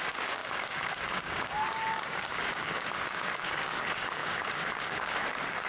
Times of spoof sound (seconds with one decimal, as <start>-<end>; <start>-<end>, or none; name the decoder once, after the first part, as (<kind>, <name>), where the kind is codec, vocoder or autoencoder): 0.0-5.7 (codec, DAC)